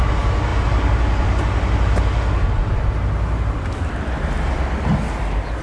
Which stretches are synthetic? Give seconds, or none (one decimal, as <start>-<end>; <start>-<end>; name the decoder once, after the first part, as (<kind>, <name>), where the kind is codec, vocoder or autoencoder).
none